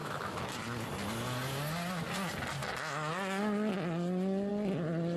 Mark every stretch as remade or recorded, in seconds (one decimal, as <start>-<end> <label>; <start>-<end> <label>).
0.0-0.5 remade; 0.5-5.2 recorded